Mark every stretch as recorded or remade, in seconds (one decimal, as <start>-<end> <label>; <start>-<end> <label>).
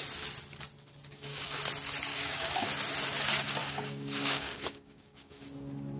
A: 0.0-1.1 recorded; 1.1-1.6 remade; 1.6-2.1 recorded; 2.1-2.7 remade; 2.7-3.6 recorded; 3.6-5.4 remade; 5.4-6.0 recorded